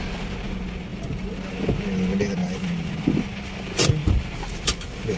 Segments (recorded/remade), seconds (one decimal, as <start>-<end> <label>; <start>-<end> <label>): 0.0-0.9 recorded; 0.9-1.5 remade; 1.5-2.4 recorded; 2.4-2.9 remade; 2.9-4.0 recorded; 4.0-5.2 remade